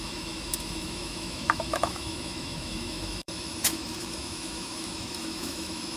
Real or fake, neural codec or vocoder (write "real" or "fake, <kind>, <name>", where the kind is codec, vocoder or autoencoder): fake, autoencoder, DAC-VAE